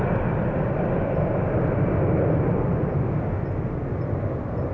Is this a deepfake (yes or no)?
no